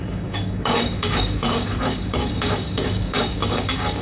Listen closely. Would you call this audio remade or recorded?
remade